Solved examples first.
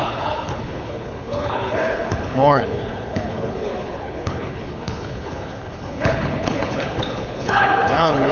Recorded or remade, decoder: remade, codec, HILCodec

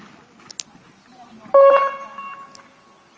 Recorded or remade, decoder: recorded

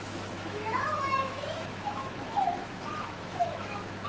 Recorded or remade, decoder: remade, autoencoder, DAC-VAE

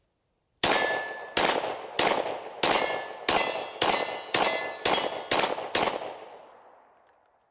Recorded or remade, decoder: recorded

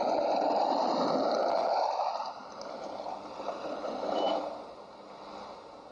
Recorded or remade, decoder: remade, vocoder, BigVGAN v2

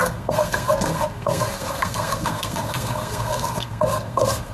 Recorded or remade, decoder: remade, codec, SNAC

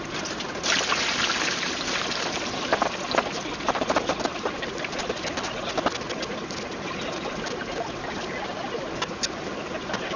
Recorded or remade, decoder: recorded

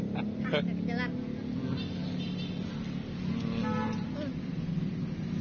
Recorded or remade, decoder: recorded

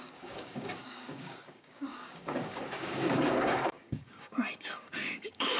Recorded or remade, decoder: remade, codec, DAC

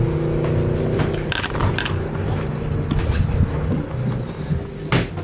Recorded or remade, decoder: recorded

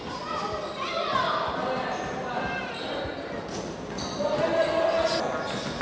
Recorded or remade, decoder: recorded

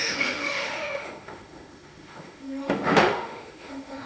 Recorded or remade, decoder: remade, autoencoder, DAC-VAE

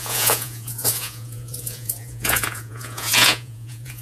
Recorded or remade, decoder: remade, vocoder, Vocos